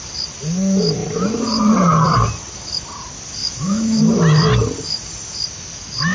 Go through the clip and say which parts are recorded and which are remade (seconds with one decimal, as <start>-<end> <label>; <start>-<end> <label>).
0.0-3.4 recorded; 3.4-4.0 remade; 4.0-6.1 recorded